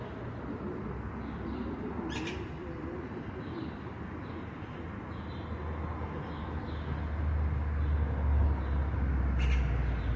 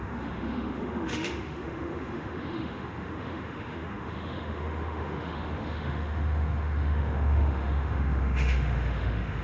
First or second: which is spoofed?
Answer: second